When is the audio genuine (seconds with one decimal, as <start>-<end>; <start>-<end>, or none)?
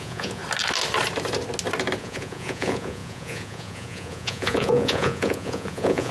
0.4-2.0